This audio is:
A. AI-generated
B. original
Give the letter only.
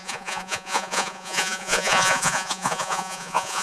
A